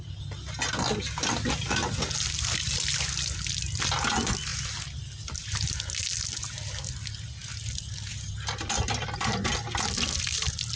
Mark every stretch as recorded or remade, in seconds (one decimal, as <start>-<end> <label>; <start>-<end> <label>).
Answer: 0.0-10.8 recorded